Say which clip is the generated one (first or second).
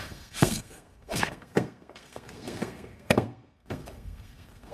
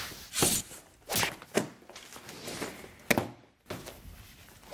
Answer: first